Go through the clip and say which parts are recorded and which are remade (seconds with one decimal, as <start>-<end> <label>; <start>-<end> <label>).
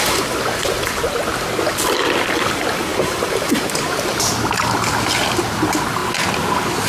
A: 0.0-2.9 recorded; 2.9-3.6 remade; 3.6-6.9 recorded